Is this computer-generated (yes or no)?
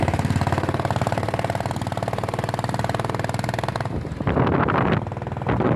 no